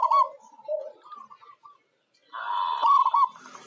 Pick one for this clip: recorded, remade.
recorded